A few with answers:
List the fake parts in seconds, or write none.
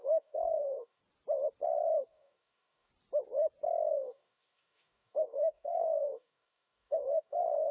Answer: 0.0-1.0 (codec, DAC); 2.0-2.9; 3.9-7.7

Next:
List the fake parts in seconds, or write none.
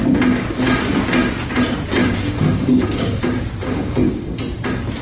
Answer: 2.0-3.2 (codec, DAC); 3.6-4.4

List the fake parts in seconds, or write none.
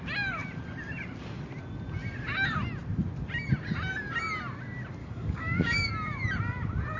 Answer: 5.0-5.9 (codec, DAC)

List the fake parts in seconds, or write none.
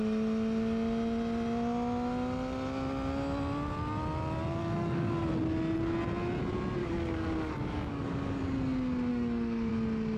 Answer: 4.6-5.1 (codec, DAC); 6.8-8.4; 9.1-9.7